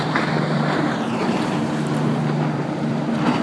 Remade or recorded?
remade